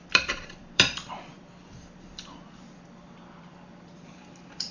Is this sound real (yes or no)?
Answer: no